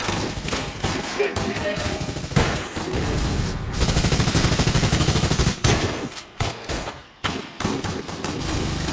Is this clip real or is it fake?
fake